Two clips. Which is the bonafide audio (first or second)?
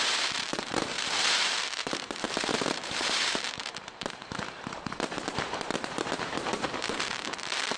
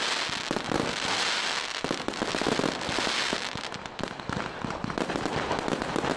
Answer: second